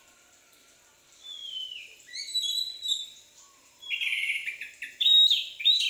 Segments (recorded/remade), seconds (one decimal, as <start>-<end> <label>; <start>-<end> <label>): 0.0-1.4 recorded; 1.4-3.9 remade; 3.9-4.4 recorded; 4.4-5.9 remade